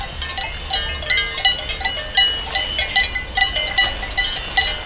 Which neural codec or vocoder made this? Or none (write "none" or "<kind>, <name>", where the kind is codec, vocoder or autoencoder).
none